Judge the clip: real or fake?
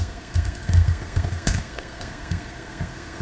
fake